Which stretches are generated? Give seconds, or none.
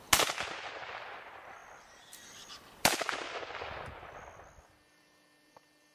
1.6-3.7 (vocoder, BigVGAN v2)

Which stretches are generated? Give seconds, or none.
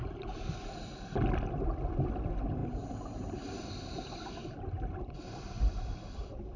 2.6-6.6 (vocoder, BigVGAN v2)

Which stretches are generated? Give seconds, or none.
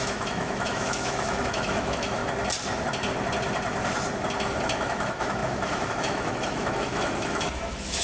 0.0-2.2 (autoencoder, DAC-VAE); 4.8-8.0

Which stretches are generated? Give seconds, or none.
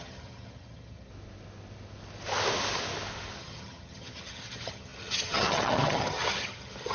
0.0-1.1 (vocoder, HiFi-GAN); 3.4-6.9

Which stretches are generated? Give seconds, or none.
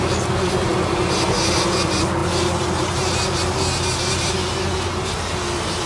none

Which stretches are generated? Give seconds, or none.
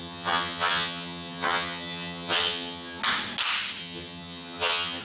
0.0-3.0 (vocoder, HiFi-GAN); 3.8-5.0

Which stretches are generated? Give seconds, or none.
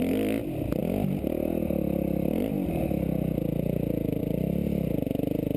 none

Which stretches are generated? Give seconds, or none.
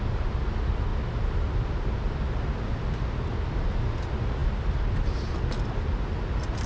none